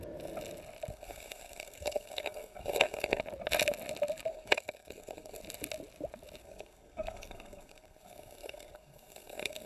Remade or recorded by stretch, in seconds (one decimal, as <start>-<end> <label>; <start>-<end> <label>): 0.0-0.9 recorded; 0.9-3.2 remade; 3.2-4.3 recorded; 4.3-5.4 remade; 5.4-6.4 recorded; 6.4-9.7 remade